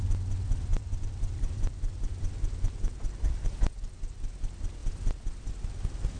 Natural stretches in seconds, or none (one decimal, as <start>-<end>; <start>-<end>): 0.0-0.7; 3.5-6.2